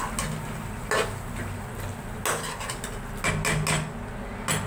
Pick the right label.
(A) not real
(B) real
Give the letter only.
B